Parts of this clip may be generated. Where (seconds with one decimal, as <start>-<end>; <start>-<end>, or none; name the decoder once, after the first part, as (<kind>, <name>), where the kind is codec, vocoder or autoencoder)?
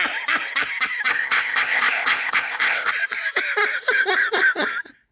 1.1-2.9 (codec, ZipCodec)